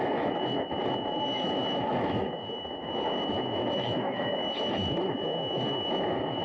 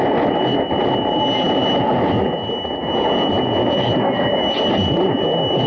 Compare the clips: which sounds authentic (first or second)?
second